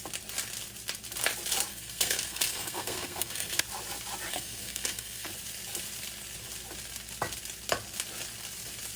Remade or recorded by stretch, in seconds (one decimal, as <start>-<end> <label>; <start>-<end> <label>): 0.0-1.7 recorded; 1.7-3.6 remade; 3.6-4.3 recorded; 4.3-5.3 remade; 5.3-9.0 recorded